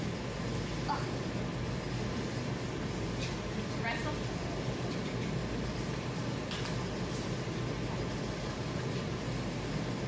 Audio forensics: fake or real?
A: real